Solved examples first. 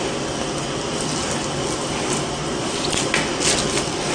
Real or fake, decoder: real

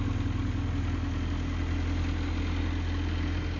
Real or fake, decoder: real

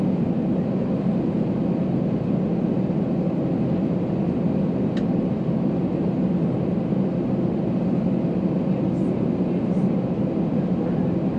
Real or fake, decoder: real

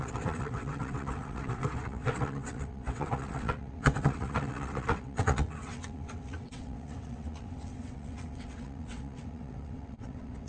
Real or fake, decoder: fake, vocoder, WaveNeXt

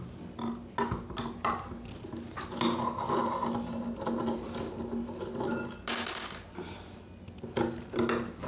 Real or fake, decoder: real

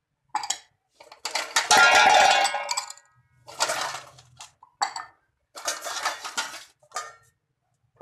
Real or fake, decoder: real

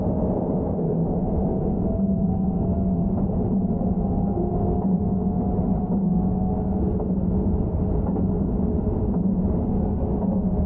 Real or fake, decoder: real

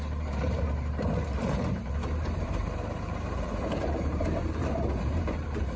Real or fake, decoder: fake, vocoder, BigVGAN v2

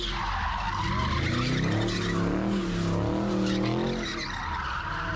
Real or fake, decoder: real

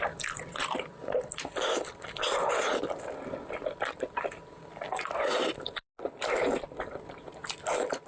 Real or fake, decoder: real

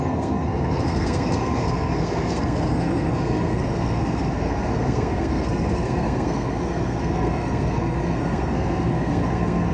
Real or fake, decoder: fake, codec, SNAC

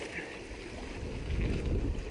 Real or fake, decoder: real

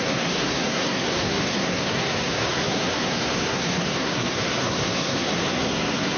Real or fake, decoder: fake, codec, SNAC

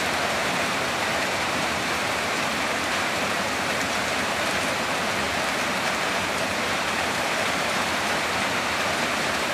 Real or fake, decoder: fake, vocoder, BigVGAN v2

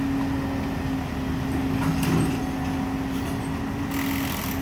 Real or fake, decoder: real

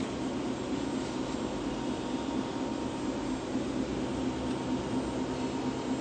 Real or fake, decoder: real